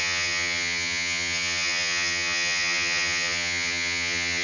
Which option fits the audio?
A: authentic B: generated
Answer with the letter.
B